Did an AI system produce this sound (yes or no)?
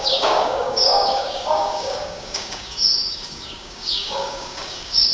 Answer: yes